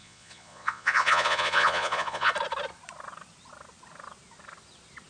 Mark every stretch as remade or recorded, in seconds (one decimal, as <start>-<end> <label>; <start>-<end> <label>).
0.0-2.3 remade; 2.3-5.1 recorded